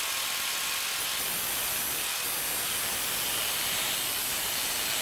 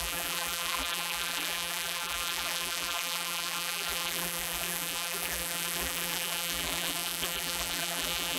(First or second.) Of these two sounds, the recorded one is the first